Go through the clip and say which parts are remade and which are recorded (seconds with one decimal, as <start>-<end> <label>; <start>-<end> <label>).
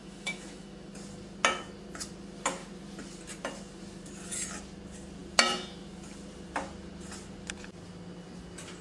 0.0-0.9 remade; 0.9-8.8 recorded